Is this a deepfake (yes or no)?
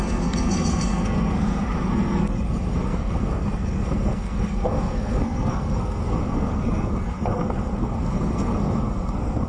yes